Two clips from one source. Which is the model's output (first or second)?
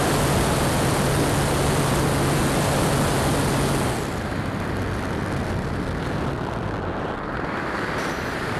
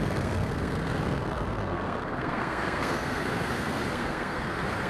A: second